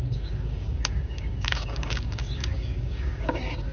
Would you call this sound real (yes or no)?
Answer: no